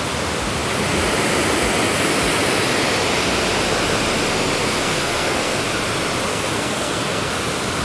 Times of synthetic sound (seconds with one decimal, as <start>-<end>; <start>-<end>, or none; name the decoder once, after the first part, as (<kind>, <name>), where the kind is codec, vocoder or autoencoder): 4.6-5.6 (codec, SNAC); 6.3-7.3